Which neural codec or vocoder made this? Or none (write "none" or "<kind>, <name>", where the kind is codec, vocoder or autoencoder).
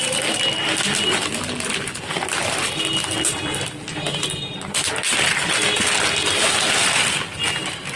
none